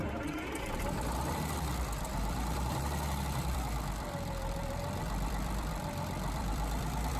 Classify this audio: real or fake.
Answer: fake